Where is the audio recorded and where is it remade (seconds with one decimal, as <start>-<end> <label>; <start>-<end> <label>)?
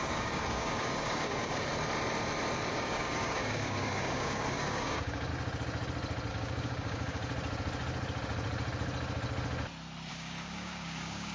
0.0-1.7 remade; 1.7-2.7 recorded; 2.7-5.3 remade; 5.3-6.3 recorded; 6.3-7.2 remade; 7.2-10.1 recorded; 10.1-11.3 remade